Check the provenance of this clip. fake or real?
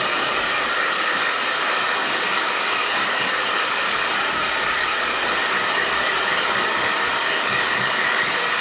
fake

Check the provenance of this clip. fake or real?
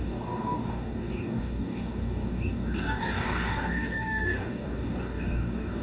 fake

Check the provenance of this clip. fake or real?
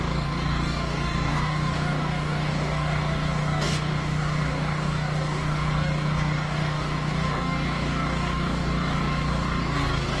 fake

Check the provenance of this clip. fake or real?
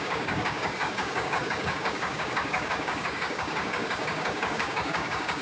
fake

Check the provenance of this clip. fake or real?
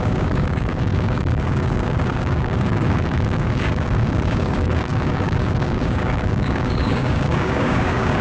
fake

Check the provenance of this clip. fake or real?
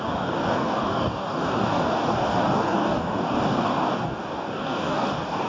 fake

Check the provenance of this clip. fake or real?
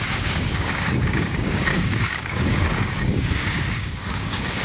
fake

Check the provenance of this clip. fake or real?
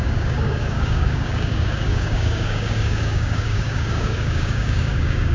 fake